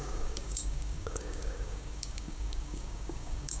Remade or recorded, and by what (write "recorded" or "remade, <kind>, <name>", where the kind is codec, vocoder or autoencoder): remade, codec, DAC